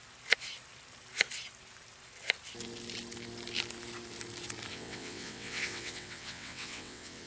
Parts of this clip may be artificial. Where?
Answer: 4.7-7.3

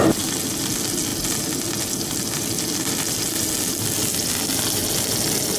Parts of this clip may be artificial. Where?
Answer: none

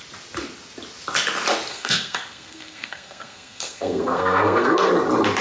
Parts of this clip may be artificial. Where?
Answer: 1.7-4.9

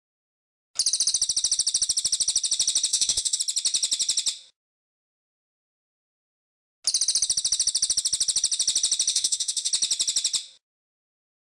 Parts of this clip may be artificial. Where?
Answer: 2.9-3.4; 9.1-9.7